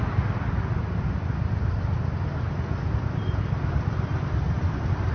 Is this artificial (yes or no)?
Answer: no